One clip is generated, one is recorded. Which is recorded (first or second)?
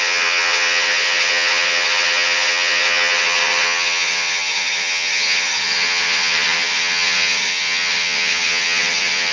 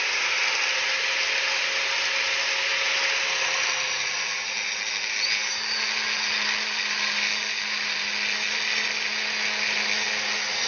second